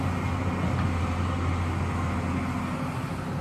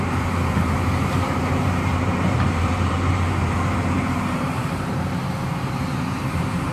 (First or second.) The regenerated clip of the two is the second